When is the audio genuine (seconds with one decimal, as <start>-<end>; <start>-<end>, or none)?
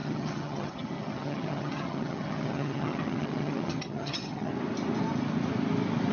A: 4.5-6.1